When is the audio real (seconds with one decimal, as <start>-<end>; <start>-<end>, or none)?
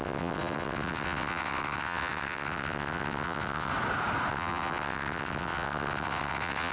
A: 3.7-4.3